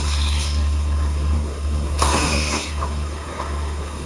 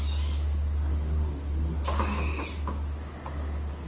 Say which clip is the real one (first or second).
second